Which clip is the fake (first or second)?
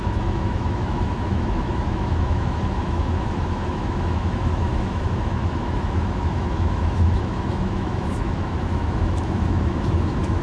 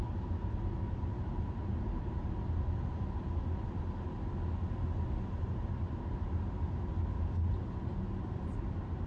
first